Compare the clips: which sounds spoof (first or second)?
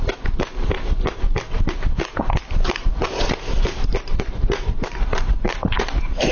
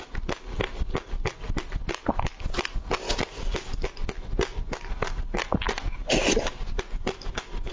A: first